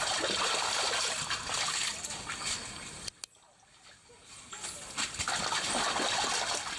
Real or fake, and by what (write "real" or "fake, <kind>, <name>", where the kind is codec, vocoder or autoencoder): real